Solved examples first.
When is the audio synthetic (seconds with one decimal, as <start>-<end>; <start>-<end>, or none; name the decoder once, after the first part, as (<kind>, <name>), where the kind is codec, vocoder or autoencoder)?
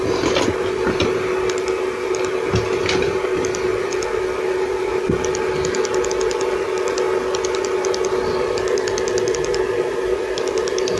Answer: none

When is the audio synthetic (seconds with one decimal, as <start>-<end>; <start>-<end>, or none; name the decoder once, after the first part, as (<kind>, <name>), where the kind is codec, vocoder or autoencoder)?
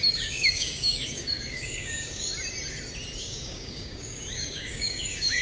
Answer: 0.0-2.3 (codec, DAC); 3.2-5.4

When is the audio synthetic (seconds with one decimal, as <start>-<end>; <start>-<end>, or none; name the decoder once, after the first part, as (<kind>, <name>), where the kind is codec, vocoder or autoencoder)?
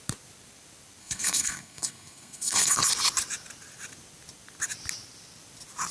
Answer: 1.0-2.8 (codec, SNAC)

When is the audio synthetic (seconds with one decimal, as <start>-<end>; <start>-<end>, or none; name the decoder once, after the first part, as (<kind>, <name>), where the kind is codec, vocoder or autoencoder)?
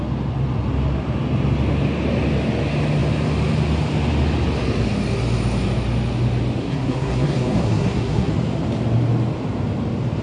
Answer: 6.6-8.3 (codec, SNAC)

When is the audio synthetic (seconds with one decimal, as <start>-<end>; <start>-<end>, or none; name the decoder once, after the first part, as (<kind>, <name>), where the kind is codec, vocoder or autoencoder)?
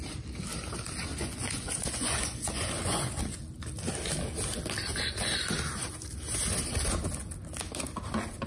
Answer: 1.1-3.2 (vocoder, Vocos)